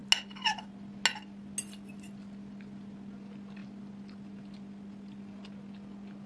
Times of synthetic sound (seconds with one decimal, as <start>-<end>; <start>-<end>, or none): none